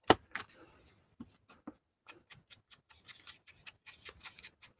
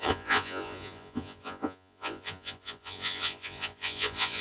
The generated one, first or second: second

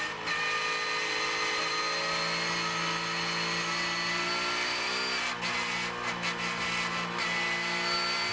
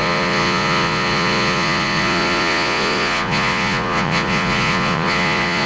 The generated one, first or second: second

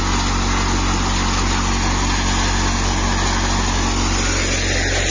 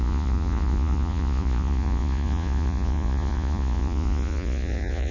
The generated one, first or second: second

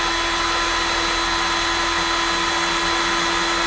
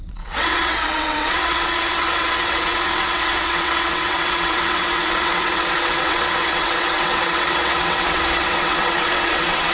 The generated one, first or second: second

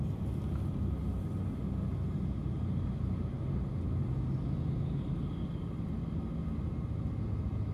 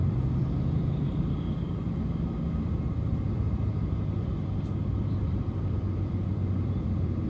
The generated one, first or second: second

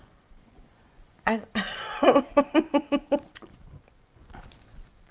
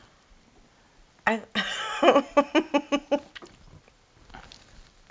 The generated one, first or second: first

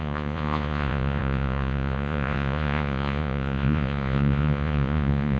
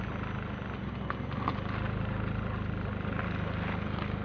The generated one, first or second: first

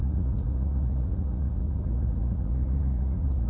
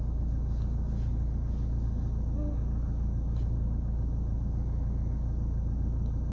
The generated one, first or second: first